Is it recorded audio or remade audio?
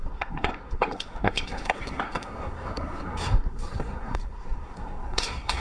remade